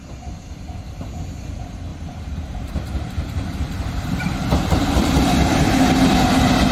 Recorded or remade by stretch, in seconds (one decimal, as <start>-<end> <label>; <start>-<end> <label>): 0.0-1.9 recorded; 1.9-5.9 remade; 5.9-6.7 recorded